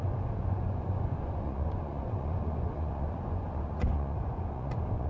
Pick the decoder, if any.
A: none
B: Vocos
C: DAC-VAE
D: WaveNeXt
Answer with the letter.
B